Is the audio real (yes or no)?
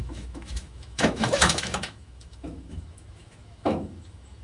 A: no